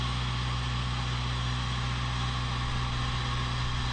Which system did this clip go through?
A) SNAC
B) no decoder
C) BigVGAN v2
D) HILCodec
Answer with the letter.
B